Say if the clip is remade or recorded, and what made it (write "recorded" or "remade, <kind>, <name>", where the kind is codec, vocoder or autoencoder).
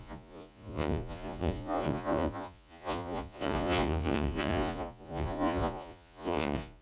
remade, vocoder, Vocos